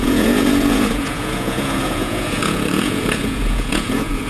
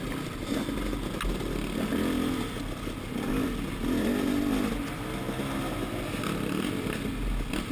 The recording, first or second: second